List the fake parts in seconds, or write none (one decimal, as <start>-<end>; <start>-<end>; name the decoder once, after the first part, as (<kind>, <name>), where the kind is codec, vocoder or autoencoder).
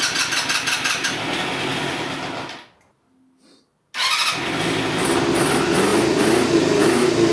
none